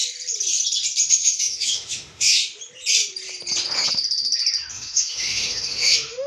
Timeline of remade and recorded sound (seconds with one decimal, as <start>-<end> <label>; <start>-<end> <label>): 0.0-1.1 recorded; 1.1-2.4 remade; 2.4-4.7 recorded; 4.7-6.3 remade